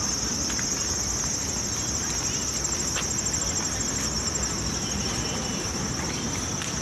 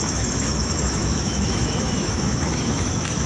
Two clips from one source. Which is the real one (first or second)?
first